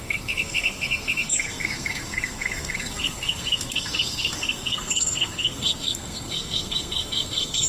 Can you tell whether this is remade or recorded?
remade